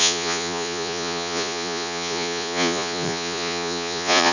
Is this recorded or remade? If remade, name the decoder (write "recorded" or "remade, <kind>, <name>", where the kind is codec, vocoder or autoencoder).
remade, vocoder, Vocos